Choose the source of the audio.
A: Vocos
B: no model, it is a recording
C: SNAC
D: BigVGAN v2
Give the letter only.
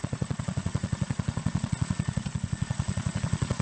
A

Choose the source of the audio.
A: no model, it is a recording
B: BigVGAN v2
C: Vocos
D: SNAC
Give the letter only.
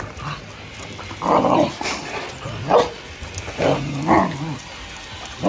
A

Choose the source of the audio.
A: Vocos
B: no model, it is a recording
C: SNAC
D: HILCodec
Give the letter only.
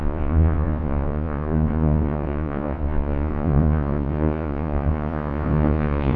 A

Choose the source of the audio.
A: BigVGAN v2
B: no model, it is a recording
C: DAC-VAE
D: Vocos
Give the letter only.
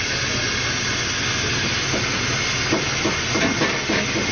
B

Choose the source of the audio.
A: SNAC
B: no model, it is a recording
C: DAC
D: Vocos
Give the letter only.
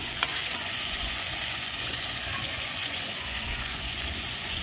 D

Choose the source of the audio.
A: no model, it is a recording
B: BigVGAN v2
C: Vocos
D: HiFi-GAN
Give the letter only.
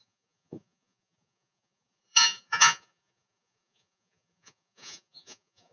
C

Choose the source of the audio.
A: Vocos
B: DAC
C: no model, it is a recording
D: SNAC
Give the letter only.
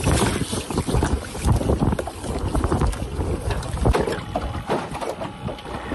C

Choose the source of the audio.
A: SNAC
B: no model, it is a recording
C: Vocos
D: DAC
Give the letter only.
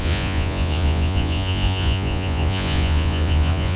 C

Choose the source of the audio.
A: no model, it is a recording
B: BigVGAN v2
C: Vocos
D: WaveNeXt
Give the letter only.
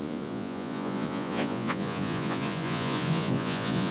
C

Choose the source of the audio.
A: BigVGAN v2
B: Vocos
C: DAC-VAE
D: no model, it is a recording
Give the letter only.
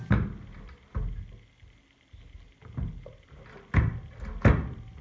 D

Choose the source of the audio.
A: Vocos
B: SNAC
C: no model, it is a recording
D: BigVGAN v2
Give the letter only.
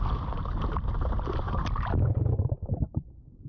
C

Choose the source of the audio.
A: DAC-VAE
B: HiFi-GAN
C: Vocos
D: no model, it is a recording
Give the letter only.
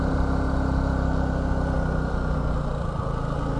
D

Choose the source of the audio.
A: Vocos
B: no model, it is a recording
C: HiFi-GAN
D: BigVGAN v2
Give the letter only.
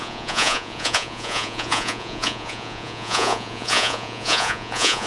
A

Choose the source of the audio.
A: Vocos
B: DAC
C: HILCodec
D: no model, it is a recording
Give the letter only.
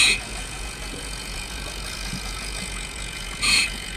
A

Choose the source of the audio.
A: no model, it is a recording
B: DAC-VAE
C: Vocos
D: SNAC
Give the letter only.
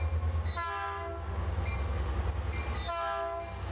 A